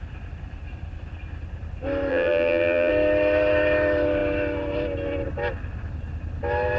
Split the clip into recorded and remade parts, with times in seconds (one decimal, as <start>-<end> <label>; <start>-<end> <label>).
0.0-2.1 recorded; 2.1-2.9 remade; 2.9-6.8 recorded